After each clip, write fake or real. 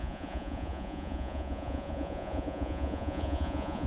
fake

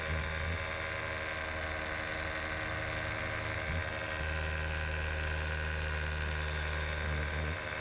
real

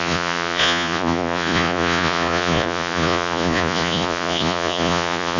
fake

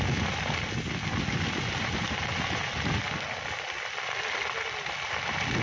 real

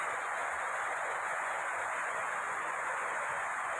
fake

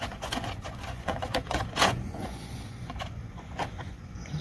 fake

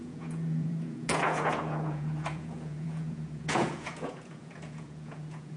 fake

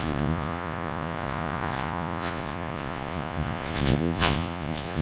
fake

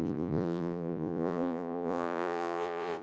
fake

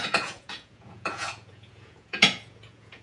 fake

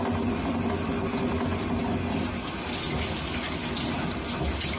real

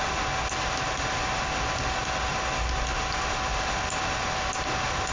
real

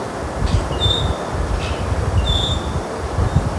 real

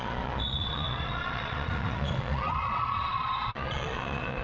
fake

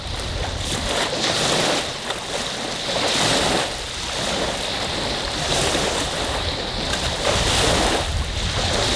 real